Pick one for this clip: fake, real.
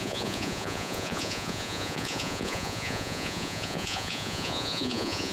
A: fake